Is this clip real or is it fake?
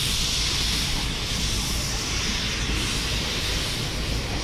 real